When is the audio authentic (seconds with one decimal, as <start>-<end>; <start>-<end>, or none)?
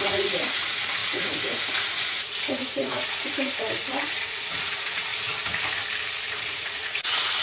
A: 5.1-6.3